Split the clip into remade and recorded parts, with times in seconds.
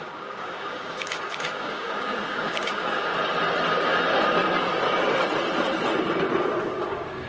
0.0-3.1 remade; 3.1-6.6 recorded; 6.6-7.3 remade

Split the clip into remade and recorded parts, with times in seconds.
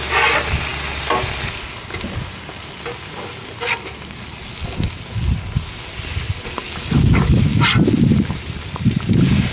0.0-6.6 recorded; 6.6-7.4 remade; 7.4-9.5 recorded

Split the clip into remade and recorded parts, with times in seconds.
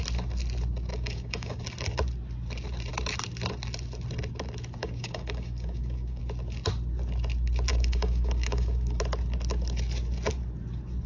0.0-0.9 recorded; 0.9-1.6 remade; 1.6-4.8 recorded; 4.8-6.2 remade; 6.2-7.7 recorded; 7.7-9.0 remade; 9.0-11.1 recorded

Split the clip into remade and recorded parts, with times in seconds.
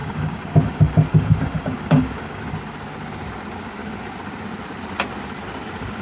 0.0-2.4 remade; 2.4-6.0 recorded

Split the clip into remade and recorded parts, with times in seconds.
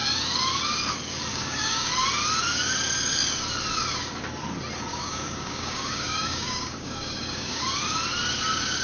0.0-1.3 recorded; 1.3-1.9 remade; 1.9-4.9 recorded; 4.9-7.6 remade; 7.6-8.8 recorded